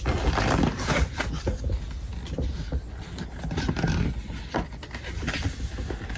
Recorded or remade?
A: recorded